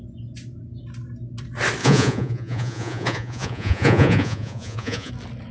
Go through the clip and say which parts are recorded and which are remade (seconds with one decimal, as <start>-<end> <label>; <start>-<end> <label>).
0.0-1.8 recorded; 1.8-5.1 remade; 5.1-5.5 recorded